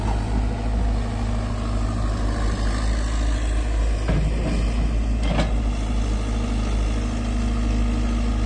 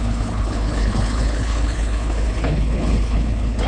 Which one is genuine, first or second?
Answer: first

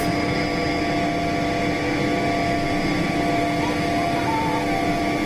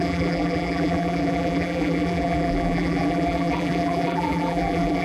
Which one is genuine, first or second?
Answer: first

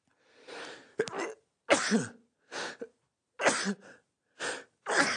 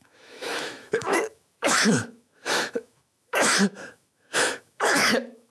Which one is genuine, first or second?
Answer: first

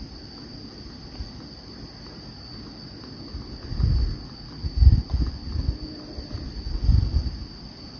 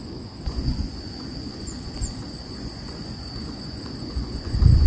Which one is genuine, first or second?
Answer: first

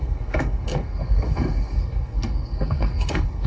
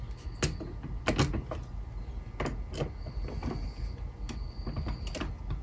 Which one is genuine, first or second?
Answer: second